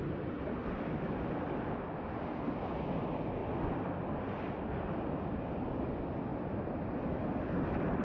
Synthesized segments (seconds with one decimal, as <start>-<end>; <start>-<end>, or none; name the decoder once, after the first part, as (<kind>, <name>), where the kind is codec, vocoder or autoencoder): 0.6-2.4 (vocoder, BigVGAN v2); 3.4-5.3; 6.3-7.4